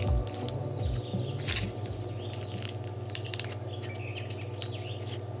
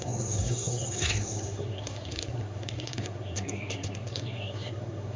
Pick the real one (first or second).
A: first